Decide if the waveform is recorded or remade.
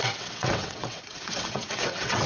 remade